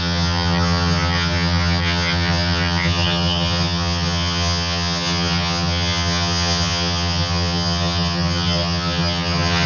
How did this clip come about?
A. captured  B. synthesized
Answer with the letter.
B